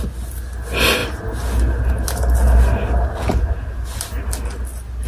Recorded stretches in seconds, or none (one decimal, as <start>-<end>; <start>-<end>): 0.0-5.1